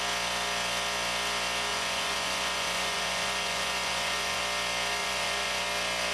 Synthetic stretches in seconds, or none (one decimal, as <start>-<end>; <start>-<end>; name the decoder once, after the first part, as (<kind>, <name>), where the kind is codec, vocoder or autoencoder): 1.7-4.4 (vocoder, Vocos); 5.0-5.6